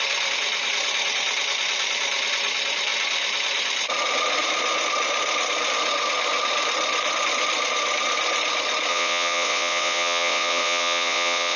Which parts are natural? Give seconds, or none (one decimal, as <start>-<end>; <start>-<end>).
0.0-8.9